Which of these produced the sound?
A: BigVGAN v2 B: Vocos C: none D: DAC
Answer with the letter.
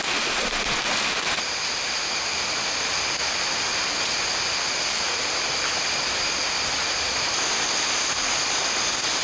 C